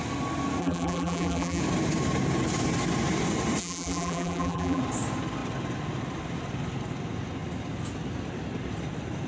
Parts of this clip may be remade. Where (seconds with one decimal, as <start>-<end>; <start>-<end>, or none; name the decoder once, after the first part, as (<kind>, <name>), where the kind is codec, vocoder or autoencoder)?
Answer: 0.6-1.6 (vocoder, BigVGAN v2); 3.6-4.8